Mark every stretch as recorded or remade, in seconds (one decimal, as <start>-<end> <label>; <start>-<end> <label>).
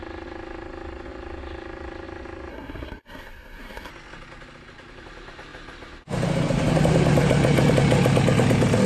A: 0.0-2.5 recorded; 2.5-3.9 remade; 3.9-8.9 recorded